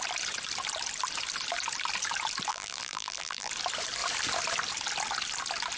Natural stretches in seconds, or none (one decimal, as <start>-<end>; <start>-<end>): 0.0-2.5; 3.5-5.8